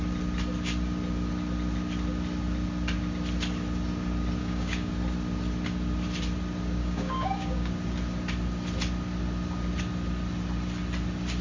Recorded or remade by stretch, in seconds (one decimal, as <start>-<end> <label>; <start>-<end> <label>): 0.0-4.4 recorded; 4.4-4.9 remade; 4.9-6.8 recorded; 6.8-7.7 remade; 7.7-11.4 recorded